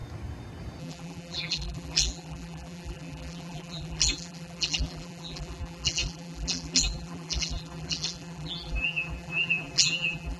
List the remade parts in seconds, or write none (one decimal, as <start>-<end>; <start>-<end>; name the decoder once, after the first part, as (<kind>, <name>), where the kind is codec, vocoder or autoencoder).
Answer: 0.8-10.4 (vocoder, BigVGAN v2)